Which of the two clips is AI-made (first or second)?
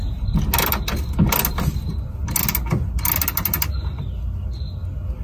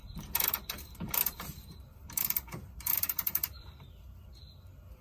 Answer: second